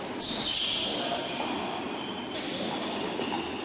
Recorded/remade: recorded